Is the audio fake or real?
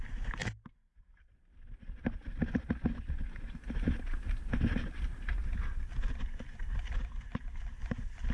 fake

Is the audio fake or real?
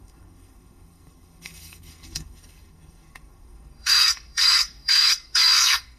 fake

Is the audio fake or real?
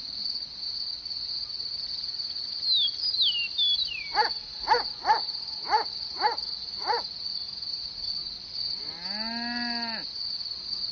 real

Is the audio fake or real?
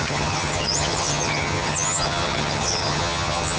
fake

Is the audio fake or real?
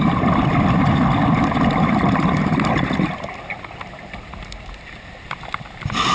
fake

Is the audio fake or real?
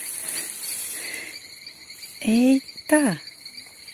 real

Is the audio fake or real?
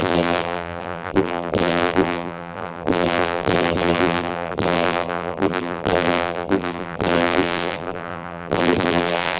fake